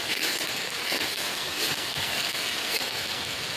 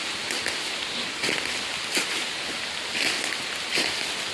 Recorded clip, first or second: second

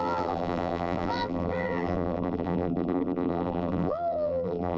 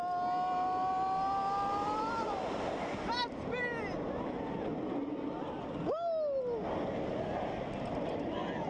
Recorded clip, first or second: second